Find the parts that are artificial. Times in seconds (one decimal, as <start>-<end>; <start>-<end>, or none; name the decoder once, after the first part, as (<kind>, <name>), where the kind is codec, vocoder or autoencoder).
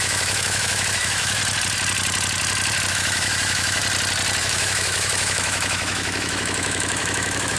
0.0-1.4 (autoencoder, DAC-VAE); 2.9-3.8; 4.4-7.6